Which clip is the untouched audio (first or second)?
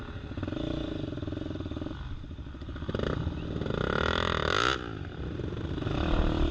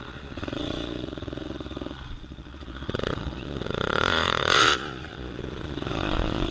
first